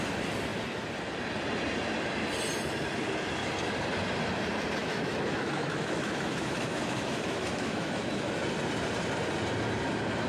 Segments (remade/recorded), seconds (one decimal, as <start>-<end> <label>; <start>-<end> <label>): 0.0-4.8 recorded; 4.8-8.4 remade; 8.4-10.3 recorded